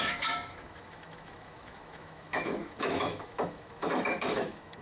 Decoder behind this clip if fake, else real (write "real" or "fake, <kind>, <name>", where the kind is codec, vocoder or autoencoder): fake, autoencoder, DAC-VAE